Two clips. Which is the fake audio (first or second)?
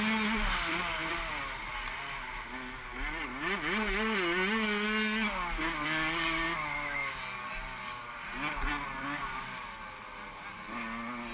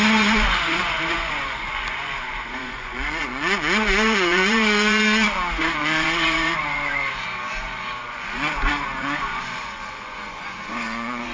second